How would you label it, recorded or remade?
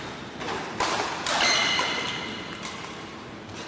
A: recorded